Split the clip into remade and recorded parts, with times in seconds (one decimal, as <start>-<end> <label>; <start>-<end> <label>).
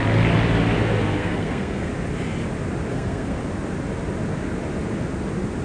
0.0-1.2 recorded; 1.2-1.9 remade; 1.9-2.9 recorded; 2.9-3.4 remade; 3.4-5.6 recorded